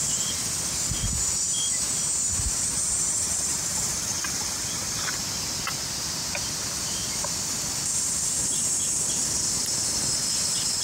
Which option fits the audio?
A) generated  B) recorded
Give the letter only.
B